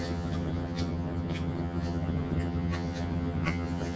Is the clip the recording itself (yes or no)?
no